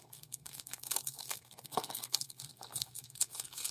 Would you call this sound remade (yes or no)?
yes